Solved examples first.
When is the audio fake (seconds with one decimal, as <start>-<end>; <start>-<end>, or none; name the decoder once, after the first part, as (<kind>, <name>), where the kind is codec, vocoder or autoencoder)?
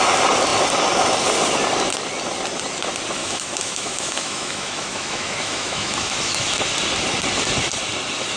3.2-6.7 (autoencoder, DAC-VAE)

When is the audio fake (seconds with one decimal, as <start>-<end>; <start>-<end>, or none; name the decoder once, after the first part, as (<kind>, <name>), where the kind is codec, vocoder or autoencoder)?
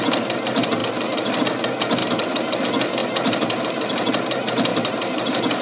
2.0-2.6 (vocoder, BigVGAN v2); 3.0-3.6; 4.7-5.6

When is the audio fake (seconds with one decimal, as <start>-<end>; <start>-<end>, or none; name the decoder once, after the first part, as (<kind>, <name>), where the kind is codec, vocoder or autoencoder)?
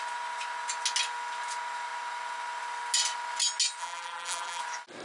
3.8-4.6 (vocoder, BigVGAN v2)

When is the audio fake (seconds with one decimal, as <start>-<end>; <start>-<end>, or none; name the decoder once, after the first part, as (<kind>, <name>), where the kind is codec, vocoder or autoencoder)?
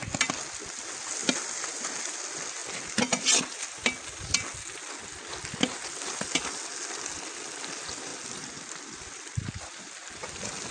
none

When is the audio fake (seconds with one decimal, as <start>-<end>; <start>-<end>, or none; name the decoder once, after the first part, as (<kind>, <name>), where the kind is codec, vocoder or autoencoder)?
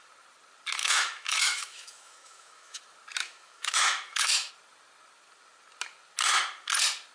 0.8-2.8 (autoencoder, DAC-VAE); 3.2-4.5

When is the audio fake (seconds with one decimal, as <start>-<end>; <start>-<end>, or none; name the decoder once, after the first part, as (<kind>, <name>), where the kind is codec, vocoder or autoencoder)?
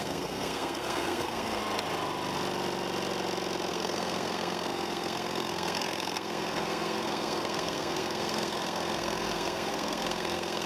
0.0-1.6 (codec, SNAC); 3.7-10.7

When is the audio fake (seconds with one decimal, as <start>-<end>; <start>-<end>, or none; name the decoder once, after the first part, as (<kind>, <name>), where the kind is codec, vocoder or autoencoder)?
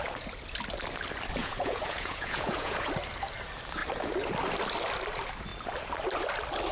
1.4-2.9 (vocoder, Vocos)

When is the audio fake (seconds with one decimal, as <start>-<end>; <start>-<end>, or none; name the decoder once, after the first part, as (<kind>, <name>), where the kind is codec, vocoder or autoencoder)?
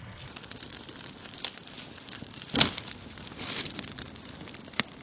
none